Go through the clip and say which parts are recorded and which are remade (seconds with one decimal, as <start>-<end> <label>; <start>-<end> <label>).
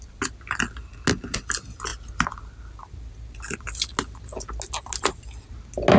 0.0-6.0 recorded